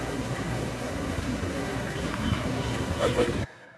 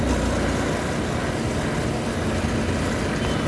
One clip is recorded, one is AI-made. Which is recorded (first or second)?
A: second